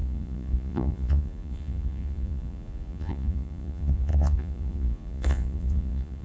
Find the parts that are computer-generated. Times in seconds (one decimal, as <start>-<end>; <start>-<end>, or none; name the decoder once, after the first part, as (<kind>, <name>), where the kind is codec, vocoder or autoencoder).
0.0-6.2 (vocoder, Vocos)